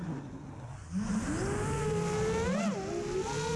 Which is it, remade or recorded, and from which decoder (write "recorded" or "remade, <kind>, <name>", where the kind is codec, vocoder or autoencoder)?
recorded